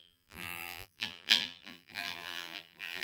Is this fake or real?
fake